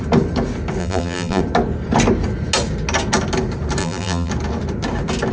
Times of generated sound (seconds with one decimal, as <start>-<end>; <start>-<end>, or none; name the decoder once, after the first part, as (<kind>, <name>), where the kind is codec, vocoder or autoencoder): 0.8-1.4 (vocoder, BigVGAN v2); 3.8-4.3